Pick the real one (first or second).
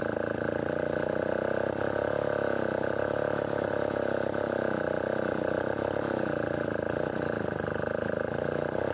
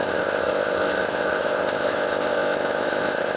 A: first